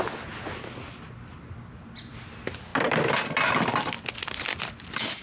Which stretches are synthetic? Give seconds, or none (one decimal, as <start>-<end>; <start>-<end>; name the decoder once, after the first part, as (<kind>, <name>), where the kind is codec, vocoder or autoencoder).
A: none